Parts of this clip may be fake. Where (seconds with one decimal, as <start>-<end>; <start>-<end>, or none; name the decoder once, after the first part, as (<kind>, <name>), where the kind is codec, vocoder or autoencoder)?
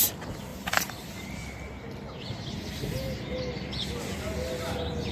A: 0.5-1.3 (vocoder, BigVGAN v2)